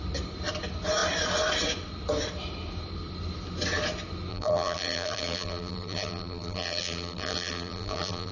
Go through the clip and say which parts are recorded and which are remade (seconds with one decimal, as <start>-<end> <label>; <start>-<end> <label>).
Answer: 0.0-4.3 recorded; 4.3-8.3 remade

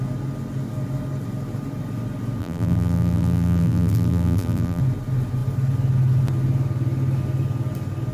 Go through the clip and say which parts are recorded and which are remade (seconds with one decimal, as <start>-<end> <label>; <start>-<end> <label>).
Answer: 0.0-2.4 recorded; 2.4-4.8 remade; 4.8-8.1 recorded

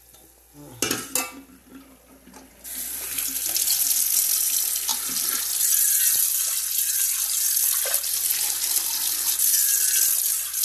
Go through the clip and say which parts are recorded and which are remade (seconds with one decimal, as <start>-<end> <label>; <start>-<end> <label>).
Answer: 0.0-10.6 recorded